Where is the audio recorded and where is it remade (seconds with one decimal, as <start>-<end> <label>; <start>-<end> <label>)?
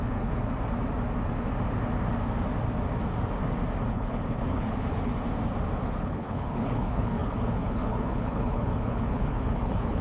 0.0-0.4 remade; 0.4-3.9 recorded; 3.9-5.1 remade; 5.1-6.0 recorded; 6.0-10.0 remade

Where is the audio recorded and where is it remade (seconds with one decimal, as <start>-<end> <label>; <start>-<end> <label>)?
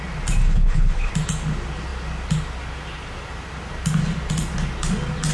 0.0-0.4 recorded; 0.4-1.1 remade; 1.1-5.3 recorded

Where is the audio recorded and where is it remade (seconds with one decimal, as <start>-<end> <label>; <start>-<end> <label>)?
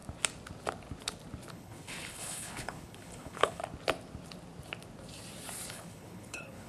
0.0-1.5 recorded; 1.5-3.6 remade; 3.6-5.7 recorded; 5.7-6.7 remade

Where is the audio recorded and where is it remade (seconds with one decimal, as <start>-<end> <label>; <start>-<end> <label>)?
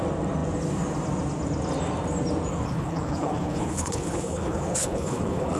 0.0-2.5 recorded; 2.5-5.6 remade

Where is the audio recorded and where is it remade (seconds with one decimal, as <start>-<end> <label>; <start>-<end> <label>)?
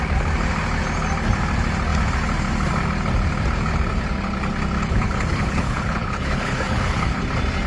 0.0-4.8 recorded; 4.8-7.2 remade; 7.2-7.7 recorded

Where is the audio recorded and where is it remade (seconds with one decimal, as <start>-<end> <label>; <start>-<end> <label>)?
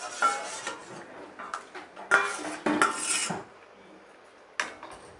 0.0-5.2 recorded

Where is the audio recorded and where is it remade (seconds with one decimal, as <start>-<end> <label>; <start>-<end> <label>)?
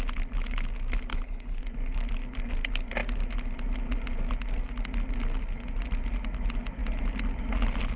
0.0-1.1 recorded; 1.1-1.6 remade; 1.6-8.0 recorded